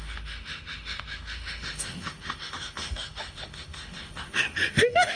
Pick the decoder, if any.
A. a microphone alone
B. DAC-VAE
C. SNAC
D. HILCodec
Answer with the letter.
B